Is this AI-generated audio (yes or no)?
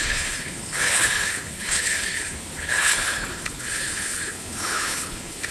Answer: yes